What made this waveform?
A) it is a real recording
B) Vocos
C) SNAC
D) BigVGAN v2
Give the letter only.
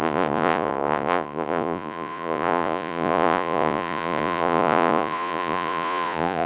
B